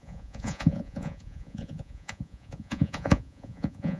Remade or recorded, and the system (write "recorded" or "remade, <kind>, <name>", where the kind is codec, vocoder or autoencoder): remade, vocoder, Vocos